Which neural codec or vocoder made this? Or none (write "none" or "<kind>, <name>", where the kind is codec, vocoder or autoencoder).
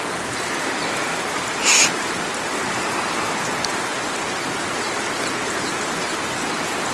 none